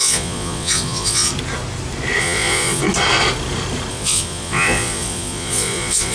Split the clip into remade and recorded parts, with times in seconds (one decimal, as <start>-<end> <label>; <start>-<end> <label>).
0.0-1.3 remade; 1.3-2.2 recorded; 2.2-2.8 remade; 2.8-3.9 recorded; 3.9-6.1 remade